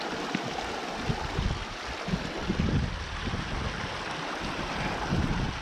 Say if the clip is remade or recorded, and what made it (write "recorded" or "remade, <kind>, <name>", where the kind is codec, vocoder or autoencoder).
recorded